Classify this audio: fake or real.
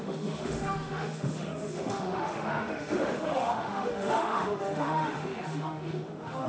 fake